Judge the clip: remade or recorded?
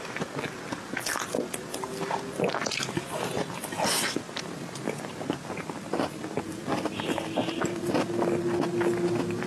recorded